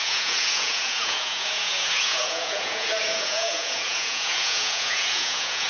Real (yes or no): no